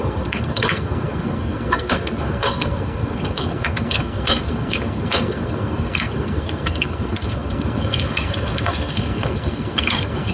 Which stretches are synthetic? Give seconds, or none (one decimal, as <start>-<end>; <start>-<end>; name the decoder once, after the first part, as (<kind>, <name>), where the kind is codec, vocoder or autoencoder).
0.0-10.3 (codec, SNAC)